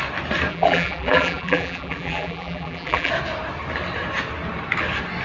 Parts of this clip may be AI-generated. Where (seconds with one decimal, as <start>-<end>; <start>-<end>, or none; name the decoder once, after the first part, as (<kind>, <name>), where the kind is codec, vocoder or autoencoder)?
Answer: 0.5-3.1 (vocoder, BigVGAN v2)